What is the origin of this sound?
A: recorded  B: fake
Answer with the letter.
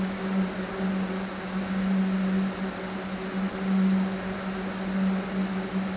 A